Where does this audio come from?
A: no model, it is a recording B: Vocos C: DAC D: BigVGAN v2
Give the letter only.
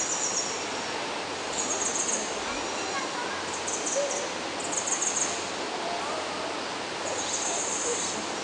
A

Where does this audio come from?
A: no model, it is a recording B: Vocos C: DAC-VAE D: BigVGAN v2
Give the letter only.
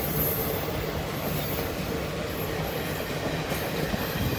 A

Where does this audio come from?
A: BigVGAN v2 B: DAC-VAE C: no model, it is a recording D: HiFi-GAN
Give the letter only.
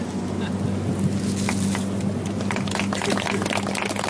C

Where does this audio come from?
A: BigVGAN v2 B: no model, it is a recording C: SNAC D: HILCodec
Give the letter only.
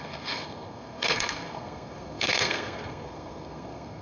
C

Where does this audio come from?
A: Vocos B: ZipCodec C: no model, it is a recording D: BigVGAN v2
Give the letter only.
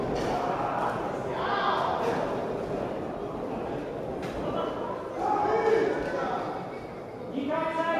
C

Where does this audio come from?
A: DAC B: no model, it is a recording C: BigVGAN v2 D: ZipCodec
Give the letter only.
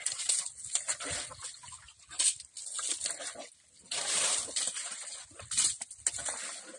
B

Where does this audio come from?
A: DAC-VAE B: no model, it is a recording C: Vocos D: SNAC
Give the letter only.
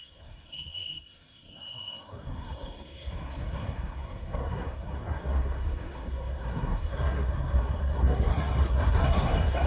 D